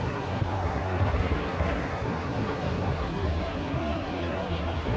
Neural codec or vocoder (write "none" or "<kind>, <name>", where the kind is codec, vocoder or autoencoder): codec, SNAC